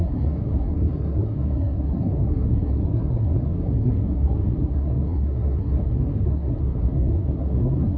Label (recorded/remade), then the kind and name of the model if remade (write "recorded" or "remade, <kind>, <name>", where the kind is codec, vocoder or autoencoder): remade, codec, SNAC